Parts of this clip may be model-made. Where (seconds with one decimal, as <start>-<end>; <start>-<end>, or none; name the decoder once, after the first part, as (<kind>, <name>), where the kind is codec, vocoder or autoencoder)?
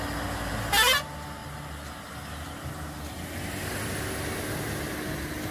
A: none